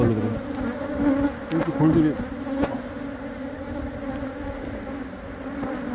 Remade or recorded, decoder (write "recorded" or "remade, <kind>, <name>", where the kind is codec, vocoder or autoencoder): recorded